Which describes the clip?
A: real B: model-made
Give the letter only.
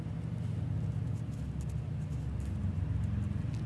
A